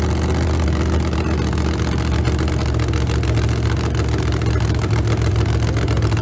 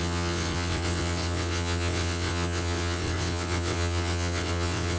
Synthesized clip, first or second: second